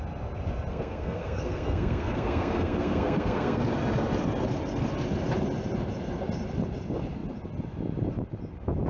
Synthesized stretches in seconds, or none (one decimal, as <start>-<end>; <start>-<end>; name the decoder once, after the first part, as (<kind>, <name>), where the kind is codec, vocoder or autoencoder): 0.7-3.6 (codec, SNAC)